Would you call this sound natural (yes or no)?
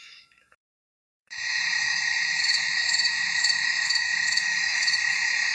no